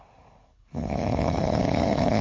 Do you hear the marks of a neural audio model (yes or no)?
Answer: yes